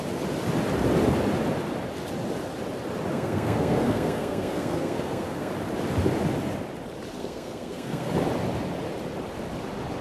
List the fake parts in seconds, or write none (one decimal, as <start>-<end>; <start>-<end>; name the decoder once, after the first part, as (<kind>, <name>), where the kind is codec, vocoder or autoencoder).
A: 3.1-5.5 (codec, SNAC); 7.2-8.1